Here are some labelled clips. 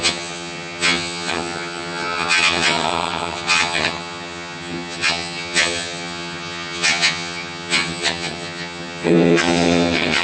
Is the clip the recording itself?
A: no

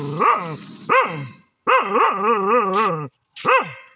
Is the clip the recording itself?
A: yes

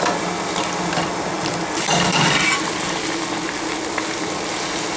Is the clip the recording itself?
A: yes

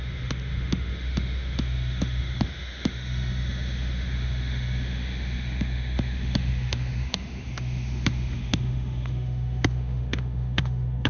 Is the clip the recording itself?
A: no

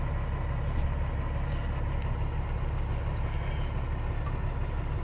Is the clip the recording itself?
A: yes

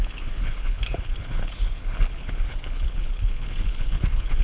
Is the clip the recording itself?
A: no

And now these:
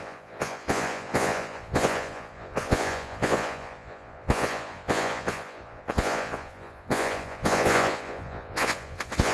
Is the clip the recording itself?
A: no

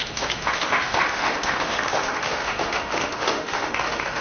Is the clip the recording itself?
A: no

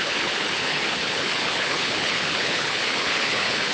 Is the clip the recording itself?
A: no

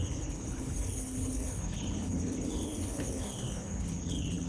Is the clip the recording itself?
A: no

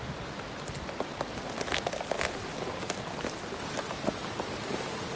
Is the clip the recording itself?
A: yes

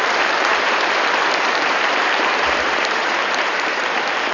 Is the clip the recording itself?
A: no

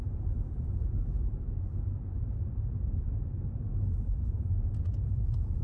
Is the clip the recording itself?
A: no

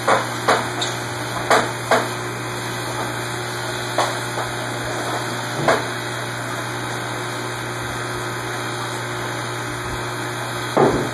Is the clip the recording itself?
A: yes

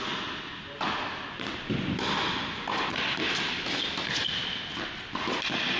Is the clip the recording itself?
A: yes